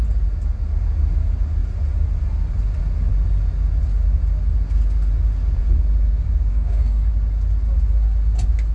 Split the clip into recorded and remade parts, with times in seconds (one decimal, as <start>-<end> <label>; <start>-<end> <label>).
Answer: 0.0-6.5 recorded; 6.5-7.1 remade; 7.1-8.7 recorded